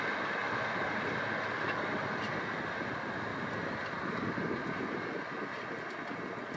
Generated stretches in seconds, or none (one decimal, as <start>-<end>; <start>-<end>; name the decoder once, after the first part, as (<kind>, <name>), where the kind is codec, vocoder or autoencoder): 0.4-2.4 (vocoder, BigVGAN v2); 3.3-4.6